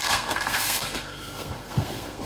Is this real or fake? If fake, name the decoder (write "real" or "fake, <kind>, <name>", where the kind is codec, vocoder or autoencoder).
fake, codec, SNAC